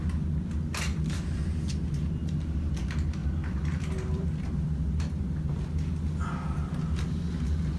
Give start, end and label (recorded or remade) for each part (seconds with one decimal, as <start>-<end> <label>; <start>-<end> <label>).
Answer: 0.0-0.7 recorded; 0.7-1.7 remade; 1.7-3.2 recorded; 3.2-4.5 remade; 4.5-7.8 recorded